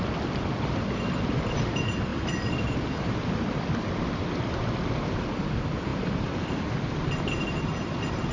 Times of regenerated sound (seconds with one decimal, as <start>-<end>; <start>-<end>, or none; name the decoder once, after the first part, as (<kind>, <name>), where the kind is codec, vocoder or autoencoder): 2.1-5.2 (vocoder, BigVGAN v2); 5.9-7.4